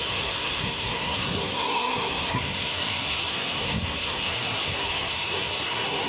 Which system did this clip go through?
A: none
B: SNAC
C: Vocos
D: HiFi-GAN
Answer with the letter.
B